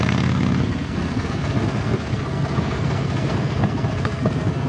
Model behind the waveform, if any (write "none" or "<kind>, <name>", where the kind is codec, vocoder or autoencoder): codec, SNAC